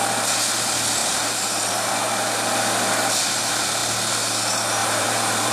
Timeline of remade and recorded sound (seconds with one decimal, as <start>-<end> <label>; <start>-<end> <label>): 0.0-1.0 recorded; 1.0-1.9 remade; 1.9-4.8 recorded; 4.8-5.5 remade